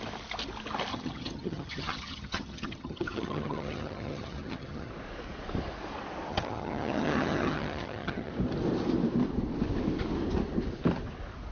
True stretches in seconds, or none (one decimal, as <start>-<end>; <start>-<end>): 0.0-0.9; 4.9-6.3; 8.3-11.5